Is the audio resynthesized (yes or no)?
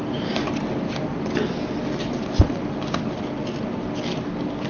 no